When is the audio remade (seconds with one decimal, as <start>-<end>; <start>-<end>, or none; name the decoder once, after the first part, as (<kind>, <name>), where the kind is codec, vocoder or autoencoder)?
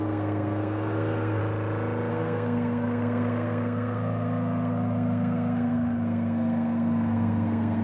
0.0-1.4 (codec, SNAC); 2.1-7.8